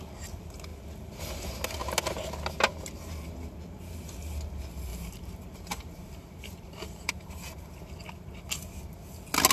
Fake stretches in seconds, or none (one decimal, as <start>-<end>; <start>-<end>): 4.9-7.9